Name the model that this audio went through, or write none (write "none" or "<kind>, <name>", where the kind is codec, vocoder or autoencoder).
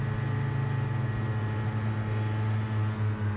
none